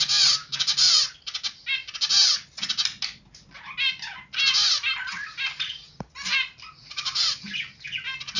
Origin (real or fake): real